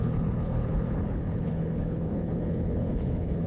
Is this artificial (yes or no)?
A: yes